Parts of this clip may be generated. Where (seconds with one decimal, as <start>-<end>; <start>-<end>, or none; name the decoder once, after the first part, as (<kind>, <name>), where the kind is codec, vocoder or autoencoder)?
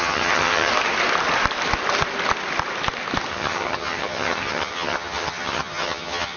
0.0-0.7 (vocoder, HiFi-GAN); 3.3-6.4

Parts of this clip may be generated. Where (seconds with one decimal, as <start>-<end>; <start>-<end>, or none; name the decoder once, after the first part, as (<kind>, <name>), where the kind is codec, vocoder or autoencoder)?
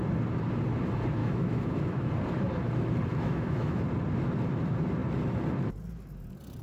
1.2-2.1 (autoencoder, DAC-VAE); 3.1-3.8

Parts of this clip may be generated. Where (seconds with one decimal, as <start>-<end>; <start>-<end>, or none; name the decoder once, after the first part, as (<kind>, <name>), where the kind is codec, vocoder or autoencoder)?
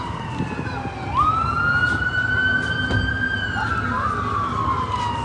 1.8-4.1 (vocoder, BigVGAN v2)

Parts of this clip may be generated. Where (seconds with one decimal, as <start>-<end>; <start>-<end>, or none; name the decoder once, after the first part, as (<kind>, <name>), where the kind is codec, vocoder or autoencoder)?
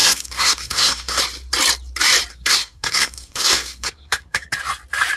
0.0-1.2 (codec, SNAC); 2.3-4.5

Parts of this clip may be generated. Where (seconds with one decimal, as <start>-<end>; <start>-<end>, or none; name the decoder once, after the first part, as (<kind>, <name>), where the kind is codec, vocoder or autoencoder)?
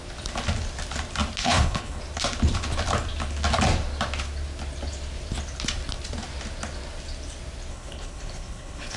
1.4-2.0 (codec, HILCodec); 7.7-9.0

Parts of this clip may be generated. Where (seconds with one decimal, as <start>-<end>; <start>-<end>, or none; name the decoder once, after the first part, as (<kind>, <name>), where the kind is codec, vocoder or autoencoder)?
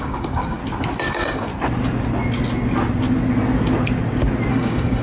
0.0-0.6 (codec, DAC); 1.1-1.5; 4.5-5.0